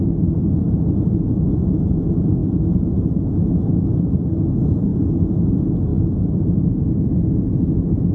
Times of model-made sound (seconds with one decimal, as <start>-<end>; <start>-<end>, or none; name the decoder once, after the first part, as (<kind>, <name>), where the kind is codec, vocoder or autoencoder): none